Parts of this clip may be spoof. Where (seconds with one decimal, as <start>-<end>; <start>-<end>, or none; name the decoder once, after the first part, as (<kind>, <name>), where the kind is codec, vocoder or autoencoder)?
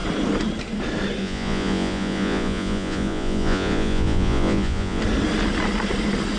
1.2-5.0 (vocoder, Vocos)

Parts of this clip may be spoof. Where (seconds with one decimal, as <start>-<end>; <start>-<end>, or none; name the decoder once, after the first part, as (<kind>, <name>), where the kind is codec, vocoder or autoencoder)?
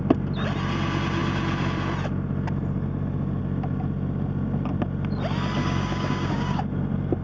5.6-6.6 (codec, DAC)